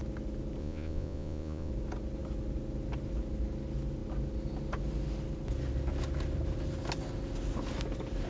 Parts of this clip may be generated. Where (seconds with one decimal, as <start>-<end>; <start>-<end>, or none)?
0.6-1.7